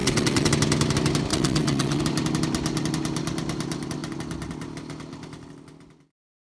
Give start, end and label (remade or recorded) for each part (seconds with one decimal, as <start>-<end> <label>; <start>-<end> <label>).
0.0-0.5 remade; 0.5-1.3 recorded; 1.3-2.0 remade; 2.0-6.5 recorded